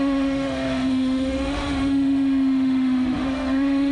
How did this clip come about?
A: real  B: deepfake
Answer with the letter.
B